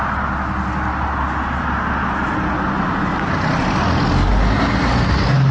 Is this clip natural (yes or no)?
yes